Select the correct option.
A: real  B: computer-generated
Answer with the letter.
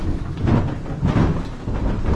A